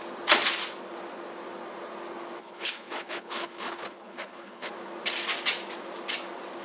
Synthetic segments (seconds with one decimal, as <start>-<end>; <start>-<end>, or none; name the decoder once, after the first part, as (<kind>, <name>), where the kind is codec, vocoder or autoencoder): 2.4-4.7 (codec, HILCodec)